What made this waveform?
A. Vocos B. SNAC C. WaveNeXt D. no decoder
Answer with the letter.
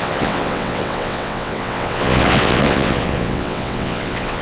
C